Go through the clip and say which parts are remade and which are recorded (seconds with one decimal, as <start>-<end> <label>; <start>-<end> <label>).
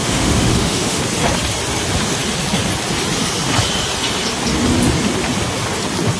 0.0-1.0 remade; 1.0-6.2 recorded